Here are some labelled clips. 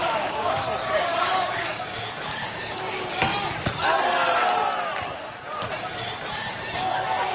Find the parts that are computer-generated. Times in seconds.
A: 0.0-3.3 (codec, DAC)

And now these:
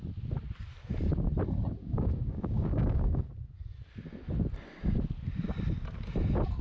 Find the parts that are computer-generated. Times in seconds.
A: 1.8-3.2 (codec, DAC)

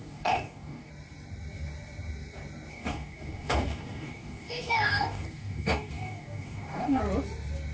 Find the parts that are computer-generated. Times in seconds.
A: 0.0-0.9 (codec, DAC); 2.7-7.0

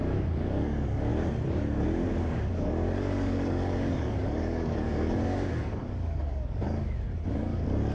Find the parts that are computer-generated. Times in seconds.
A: 0.0-1.1 (codec, DAC); 2.1-7.9

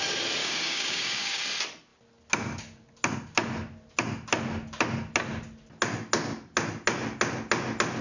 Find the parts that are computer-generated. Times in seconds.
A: 0.4-1.4 (codec, DAC)

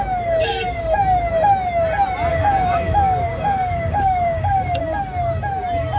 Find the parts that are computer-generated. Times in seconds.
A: 0.4-1.0 (codec, DAC); 2.3-4.8

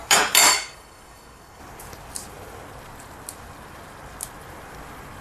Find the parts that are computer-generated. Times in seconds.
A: 0.5-1.6 (codec, DAC)